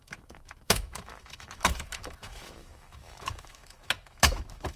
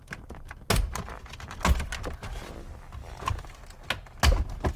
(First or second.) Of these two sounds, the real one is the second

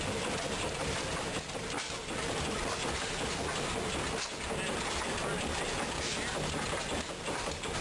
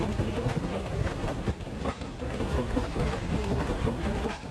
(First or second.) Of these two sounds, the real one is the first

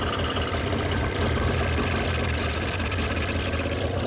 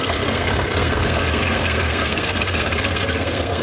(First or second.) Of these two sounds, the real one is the first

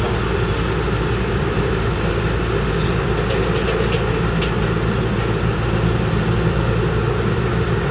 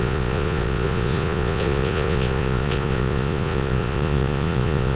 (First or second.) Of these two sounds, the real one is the first